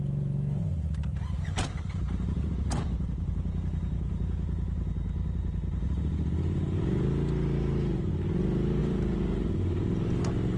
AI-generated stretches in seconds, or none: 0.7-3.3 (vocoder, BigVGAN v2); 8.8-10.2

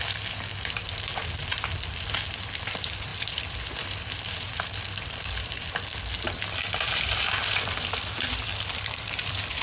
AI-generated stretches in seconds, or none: 0.0-0.5 (vocoder, BigVGAN v2); 2.6-9.6

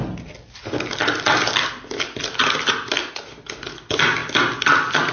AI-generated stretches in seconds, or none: none

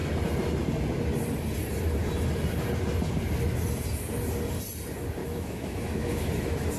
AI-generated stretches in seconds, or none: 5.2-6.3 (autoencoder, DAC-VAE)